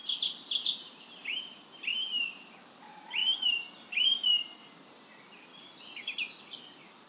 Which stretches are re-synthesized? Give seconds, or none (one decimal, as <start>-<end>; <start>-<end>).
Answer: 1.4-5.5; 6.4-7.1